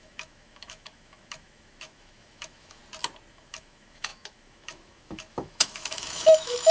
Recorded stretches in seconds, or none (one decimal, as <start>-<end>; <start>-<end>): 2.8-3.3